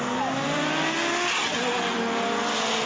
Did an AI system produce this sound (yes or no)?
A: no